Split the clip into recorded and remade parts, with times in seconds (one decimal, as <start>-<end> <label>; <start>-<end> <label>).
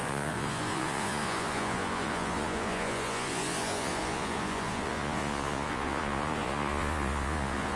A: 0.0-7.8 remade